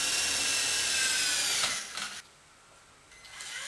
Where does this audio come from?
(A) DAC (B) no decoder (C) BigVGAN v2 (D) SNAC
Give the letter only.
B